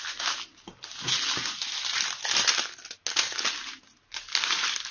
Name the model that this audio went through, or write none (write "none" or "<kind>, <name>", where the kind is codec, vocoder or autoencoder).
none